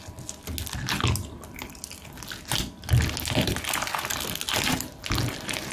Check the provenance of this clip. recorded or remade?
recorded